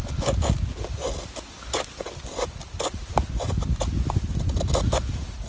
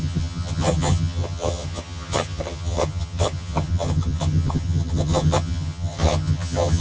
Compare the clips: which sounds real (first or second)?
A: first